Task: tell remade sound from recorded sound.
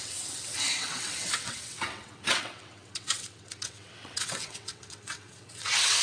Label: remade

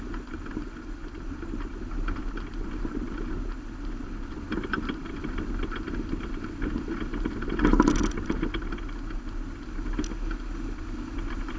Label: recorded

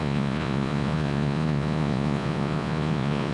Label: remade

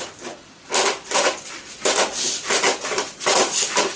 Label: remade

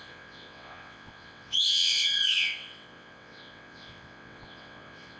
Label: remade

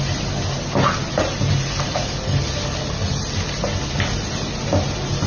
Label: recorded